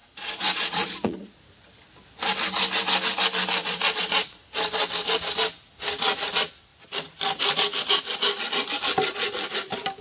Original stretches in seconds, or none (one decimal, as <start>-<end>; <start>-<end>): 1.4-3.6; 4.4-10.0